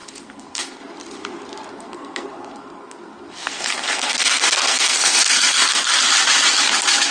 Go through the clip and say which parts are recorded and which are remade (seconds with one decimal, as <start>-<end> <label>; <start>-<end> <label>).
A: 0.0-0.8 remade; 0.8-1.7 recorded; 1.7-6.0 remade; 6.0-7.1 recorded